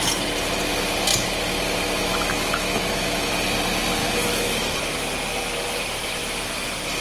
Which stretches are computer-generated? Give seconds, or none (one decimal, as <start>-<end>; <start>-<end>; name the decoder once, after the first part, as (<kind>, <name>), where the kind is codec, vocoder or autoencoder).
2.0-3.3 (autoencoder, DAC-VAE); 4.0-4.8